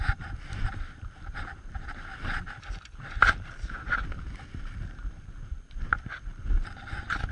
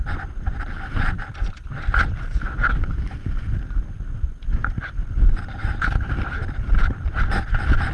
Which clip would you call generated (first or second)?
first